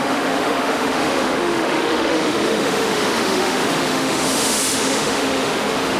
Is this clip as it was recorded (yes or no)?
no